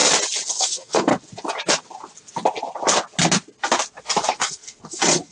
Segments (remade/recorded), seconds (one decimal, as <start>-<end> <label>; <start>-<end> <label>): 0.0-0.5 recorded; 0.5-1.1 remade; 1.1-4.3 recorded; 4.3-5.3 remade